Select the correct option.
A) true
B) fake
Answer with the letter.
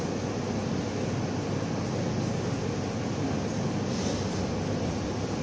A